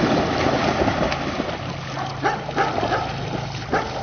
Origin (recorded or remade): recorded